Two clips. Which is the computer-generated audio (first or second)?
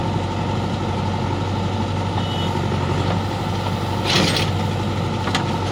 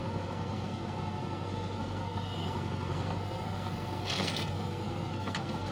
second